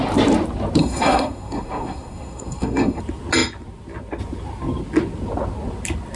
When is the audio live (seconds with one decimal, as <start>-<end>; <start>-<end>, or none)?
0.0-0.8; 3.0-6.2

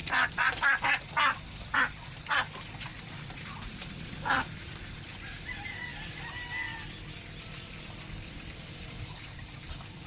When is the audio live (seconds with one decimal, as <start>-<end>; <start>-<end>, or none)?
0.8-2.9; 5.5-5.9